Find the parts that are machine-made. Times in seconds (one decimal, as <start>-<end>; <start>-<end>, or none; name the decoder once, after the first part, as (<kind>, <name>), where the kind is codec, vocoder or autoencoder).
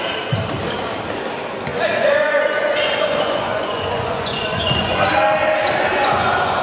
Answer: 1.7-5.1 (vocoder, Vocos); 5.9-6.6